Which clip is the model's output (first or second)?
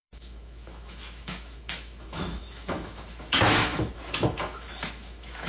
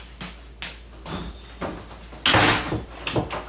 first